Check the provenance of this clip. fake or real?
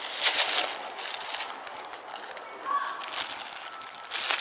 real